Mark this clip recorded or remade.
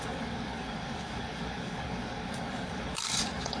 remade